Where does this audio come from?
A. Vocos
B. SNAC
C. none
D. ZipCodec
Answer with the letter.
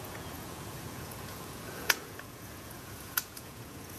A